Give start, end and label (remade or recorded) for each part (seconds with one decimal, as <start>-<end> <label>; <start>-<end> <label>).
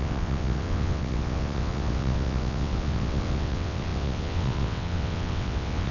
0.0-5.9 remade